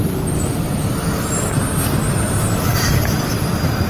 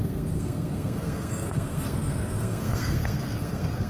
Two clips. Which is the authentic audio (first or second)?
first